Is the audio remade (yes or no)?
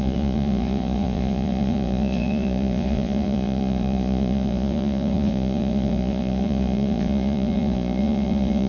yes